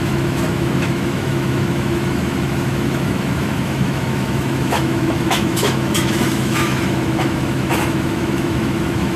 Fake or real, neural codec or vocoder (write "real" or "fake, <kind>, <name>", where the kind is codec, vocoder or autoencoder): fake, autoencoder, DAC-VAE